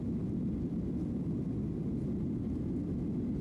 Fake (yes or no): no